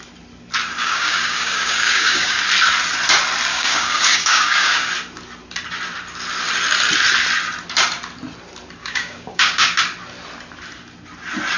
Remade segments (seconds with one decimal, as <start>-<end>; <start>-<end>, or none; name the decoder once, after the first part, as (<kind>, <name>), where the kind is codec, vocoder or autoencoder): 0.8-2.4 (codec, DAC); 3.5-4.9; 8.8-9.8